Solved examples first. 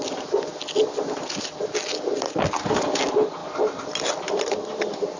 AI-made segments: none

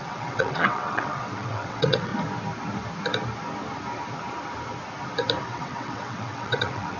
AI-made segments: 0.0-2.1; 5.4-7.0

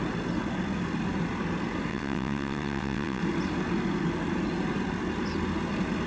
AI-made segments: 1.9-3.2

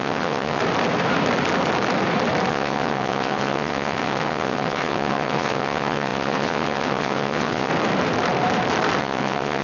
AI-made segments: 0.0-0.6; 2.5-7.7; 9.0-9.6

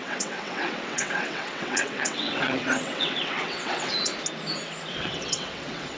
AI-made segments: 0.0-4.1; 4.9-6.0

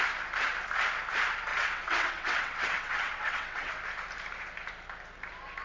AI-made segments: 1.5-3.7

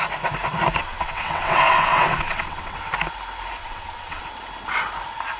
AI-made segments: 0.8-2.9; 3.6-4.2